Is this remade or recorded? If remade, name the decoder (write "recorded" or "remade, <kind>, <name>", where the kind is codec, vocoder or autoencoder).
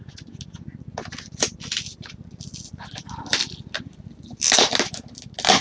recorded